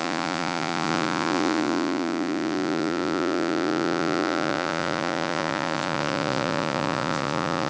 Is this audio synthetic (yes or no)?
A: yes